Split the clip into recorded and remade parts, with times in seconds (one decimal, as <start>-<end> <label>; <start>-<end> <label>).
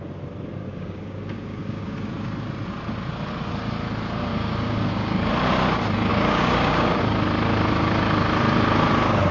0.0-0.6 recorded; 0.6-2.0 remade; 2.0-4.3 recorded; 4.3-5.3 remade; 5.3-6.1 recorded; 6.1-7.0 remade; 7.0-9.3 recorded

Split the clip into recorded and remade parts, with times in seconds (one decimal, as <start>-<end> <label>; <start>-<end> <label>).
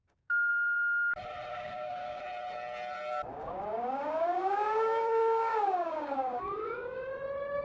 0.0-0.5 remade; 0.5-1.5 recorded; 1.5-2.2 remade; 2.2-3.3 recorded; 3.3-7.1 remade; 7.1-7.6 recorded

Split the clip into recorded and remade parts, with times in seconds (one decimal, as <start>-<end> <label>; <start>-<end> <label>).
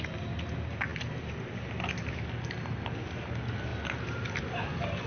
0.0-5.1 recorded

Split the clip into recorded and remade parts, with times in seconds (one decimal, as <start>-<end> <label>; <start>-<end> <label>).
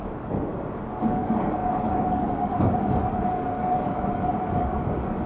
0.0-0.5 remade; 0.5-1.0 recorded; 1.0-5.3 remade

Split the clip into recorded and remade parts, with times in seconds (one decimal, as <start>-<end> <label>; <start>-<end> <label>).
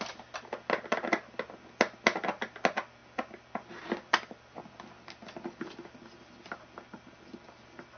0.0-8.0 recorded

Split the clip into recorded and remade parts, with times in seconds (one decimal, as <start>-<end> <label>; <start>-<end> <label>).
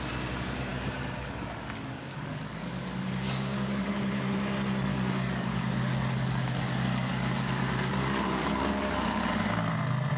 0.0-0.7 recorded; 0.7-3.9 remade; 3.9-4.9 recorded; 4.9-9.2 remade; 9.2-10.2 recorded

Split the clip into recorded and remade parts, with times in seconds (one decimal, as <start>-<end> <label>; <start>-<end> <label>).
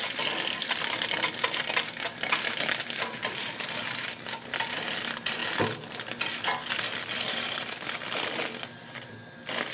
0.0-9.7 recorded